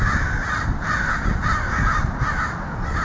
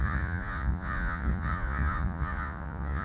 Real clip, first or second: first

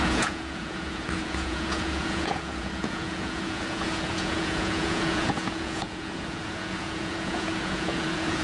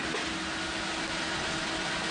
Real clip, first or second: second